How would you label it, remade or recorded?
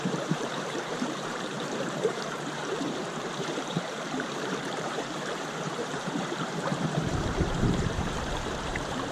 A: remade